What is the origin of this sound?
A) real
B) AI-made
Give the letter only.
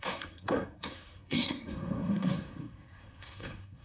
B